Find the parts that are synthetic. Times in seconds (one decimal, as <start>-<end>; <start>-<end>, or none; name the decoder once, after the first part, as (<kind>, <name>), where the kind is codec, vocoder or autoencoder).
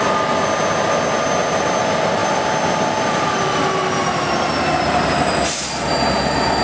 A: 2.2-6.6 (vocoder, BigVGAN v2)